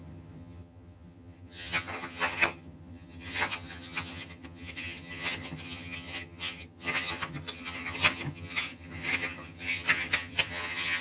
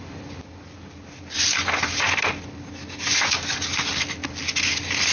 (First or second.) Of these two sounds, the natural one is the second